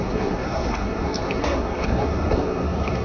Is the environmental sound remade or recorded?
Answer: remade